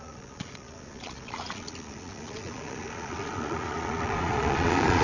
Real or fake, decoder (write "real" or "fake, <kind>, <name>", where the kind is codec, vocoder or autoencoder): fake, vocoder, Vocos